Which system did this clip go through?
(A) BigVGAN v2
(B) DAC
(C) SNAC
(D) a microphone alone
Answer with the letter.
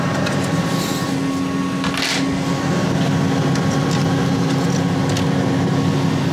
D